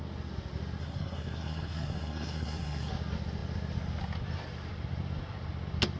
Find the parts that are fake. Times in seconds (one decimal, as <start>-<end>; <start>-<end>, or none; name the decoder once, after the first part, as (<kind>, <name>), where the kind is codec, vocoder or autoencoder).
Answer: 0.8-2.9 (codec, SNAC)